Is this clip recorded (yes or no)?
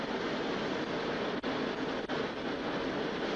yes